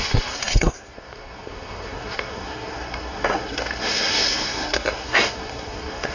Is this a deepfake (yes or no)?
yes